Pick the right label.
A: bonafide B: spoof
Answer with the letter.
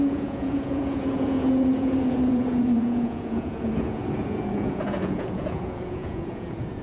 B